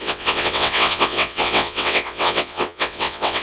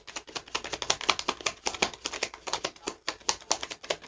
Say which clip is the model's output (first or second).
first